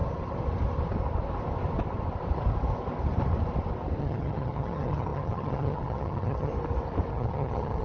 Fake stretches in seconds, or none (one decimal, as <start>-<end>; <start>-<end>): 4.0-6.5; 7.1-7.8